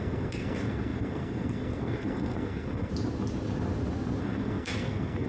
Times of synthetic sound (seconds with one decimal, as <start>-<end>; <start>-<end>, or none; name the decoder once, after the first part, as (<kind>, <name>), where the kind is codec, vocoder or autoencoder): 0.0-2.9 (codec, SNAC); 4.2-5.3